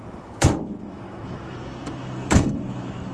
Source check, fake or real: fake